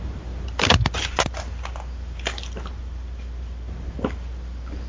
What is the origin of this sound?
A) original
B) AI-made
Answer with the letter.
A